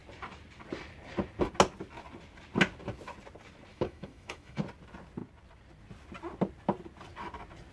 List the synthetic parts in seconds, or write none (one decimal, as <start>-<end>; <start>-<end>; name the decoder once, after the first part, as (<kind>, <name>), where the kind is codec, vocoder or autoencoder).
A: 3.7-4.6 (autoencoder, DAC-VAE)